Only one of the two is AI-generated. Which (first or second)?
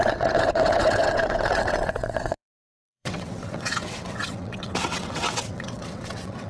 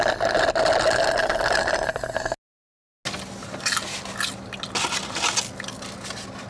first